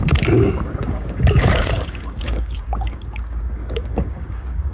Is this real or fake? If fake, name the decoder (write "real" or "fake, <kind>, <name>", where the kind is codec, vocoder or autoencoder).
fake, codec, DAC